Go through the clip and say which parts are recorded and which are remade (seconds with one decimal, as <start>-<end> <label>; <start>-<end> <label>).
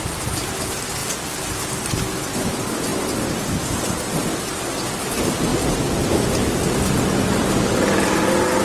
0.0-8.6 recorded